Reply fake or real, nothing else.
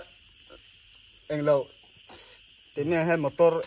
real